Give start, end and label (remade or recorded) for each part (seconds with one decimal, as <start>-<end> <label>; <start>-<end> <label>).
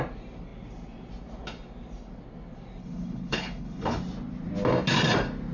0.0-2.8 recorded; 2.8-4.0 remade; 4.0-5.5 recorded